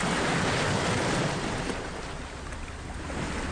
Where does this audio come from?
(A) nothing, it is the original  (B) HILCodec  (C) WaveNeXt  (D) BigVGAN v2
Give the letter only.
A